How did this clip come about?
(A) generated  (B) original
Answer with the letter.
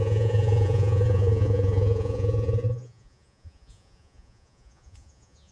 A